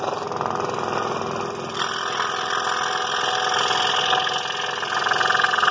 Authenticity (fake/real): real